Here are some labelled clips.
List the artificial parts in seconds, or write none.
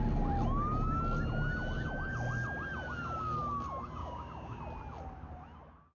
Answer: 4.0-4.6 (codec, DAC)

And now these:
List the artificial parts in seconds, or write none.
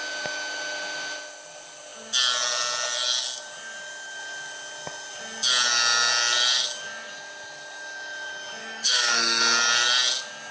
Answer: 8.6-9.4 (codec, DAC)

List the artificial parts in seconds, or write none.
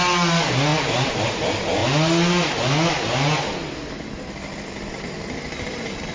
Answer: none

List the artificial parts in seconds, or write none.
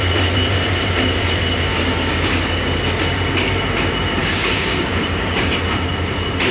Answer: 1.7-2.8 (codec, DAC); 4.2-5.5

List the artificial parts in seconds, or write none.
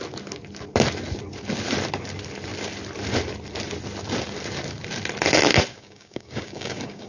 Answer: 5.7-7.1 (codec, DAC)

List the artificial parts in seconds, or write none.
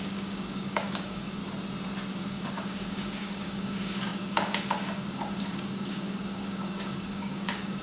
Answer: 0.0-1.4 (codec, DAC); 2.1-7.8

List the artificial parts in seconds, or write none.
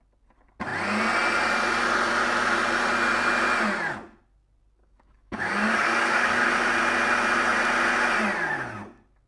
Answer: 4.8-6.5 (codec, DAC)